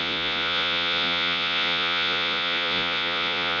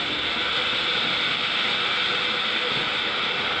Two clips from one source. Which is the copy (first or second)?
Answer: first